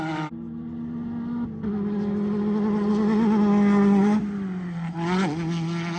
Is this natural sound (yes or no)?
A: yes